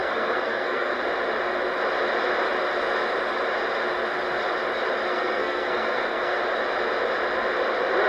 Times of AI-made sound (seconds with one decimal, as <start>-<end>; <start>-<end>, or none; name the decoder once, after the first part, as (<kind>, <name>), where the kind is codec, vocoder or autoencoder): 0.0-1.0 (codec, SNAC); 5.1-6.4